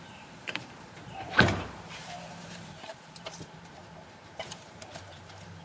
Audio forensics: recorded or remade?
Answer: remade